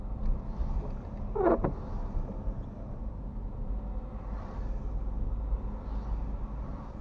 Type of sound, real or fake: real